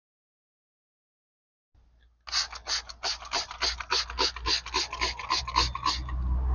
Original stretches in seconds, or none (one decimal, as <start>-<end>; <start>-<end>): 0.0-6.5